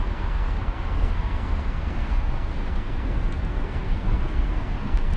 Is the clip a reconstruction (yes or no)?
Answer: yes